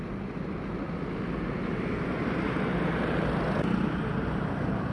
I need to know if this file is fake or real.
real